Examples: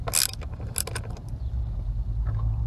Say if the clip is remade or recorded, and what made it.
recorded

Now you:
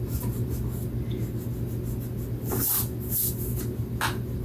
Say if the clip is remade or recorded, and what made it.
recorded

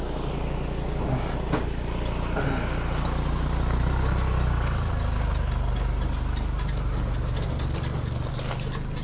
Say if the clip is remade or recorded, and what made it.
recorded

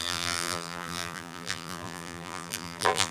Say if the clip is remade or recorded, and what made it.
remade, vocoder, BigVGAN v2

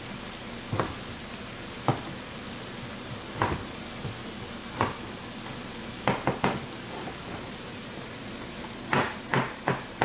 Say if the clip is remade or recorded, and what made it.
recorded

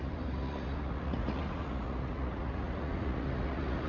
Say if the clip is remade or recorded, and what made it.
remade, vocoder, Vocos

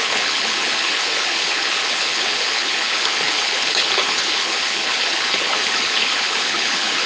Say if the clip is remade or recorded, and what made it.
remade, codec, HILCodec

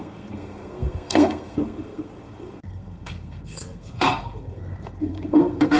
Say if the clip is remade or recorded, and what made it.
remade, codec, SNAC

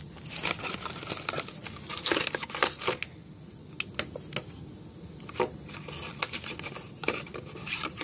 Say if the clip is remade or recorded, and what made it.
recorded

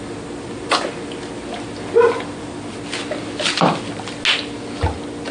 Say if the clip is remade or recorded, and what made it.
recorded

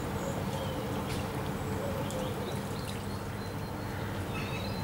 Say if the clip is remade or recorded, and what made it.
recorded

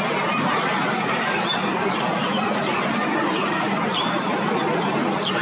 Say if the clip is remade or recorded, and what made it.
recorded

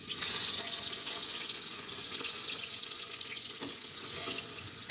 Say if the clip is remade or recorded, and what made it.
remade, vocoder, Vocos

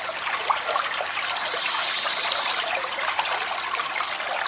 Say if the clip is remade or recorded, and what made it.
recorded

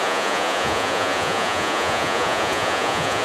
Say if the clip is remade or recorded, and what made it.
remade, vocoder, Vocos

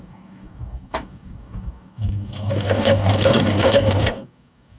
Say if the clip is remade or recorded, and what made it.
remade, codec, DAC